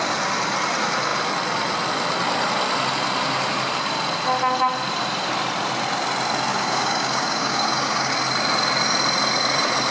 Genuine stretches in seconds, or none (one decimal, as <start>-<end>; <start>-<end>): 0.0-6.5; 8.1-9.9